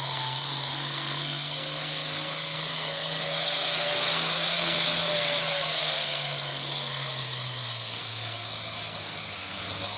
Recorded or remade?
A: remade